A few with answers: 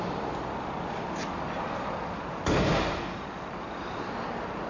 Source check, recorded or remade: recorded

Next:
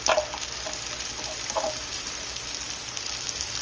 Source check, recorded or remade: recorded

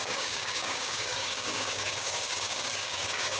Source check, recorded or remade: remade